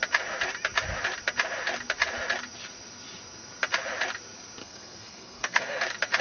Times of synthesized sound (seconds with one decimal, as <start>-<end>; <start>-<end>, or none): 4.6-5.8